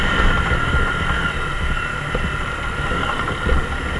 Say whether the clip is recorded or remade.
recorded